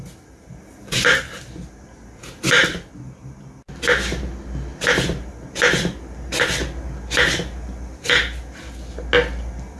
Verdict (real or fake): real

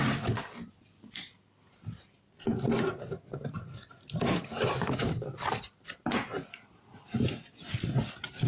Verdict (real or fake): real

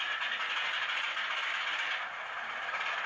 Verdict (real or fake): real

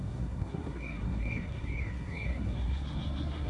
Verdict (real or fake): fake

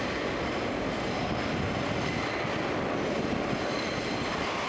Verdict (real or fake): fake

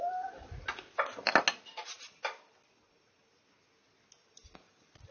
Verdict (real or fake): real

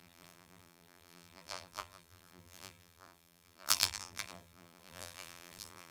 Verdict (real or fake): fake